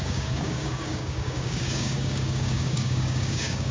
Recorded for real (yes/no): no